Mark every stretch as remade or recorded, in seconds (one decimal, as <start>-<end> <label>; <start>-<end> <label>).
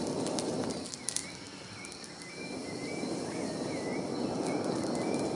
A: 0.0-1.2 remade; 1.2-4.4 recorded; 4.4-5.4 remade